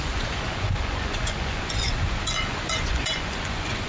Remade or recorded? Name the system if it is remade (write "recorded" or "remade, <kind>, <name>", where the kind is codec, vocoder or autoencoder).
remade, vocoder, Vocos